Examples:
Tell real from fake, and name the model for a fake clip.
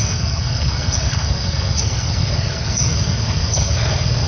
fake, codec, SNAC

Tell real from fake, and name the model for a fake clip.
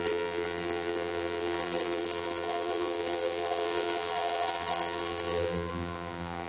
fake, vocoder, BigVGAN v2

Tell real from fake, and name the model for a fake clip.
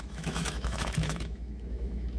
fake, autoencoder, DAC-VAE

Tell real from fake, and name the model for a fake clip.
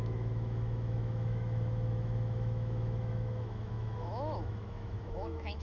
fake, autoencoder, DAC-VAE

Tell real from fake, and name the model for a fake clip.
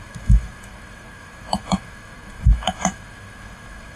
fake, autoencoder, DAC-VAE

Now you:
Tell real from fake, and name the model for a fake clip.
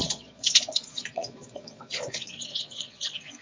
fake, vocoder, Vocos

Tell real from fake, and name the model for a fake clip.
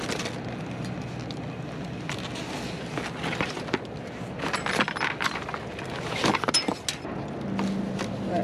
real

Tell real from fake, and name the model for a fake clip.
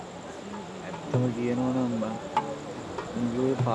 real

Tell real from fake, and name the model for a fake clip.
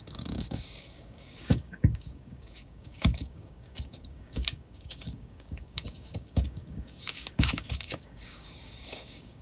fake, codec, DAC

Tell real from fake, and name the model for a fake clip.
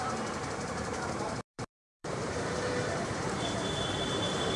fake, vocoder, BigVGAN v2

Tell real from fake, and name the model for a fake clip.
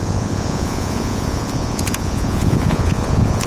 fake, vocoder, Vocos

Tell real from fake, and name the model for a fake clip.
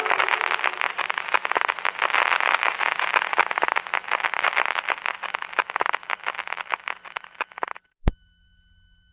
fake, vocoder, BigVGAN v2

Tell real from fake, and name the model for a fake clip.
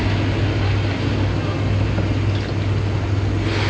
real